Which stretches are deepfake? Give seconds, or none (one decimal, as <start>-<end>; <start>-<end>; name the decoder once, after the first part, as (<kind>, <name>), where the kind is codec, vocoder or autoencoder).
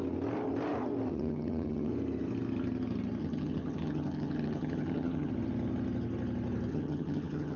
1.1-1.9 (vocoder, HiFi-GAN); 3.2-5.3; 6.7-7.6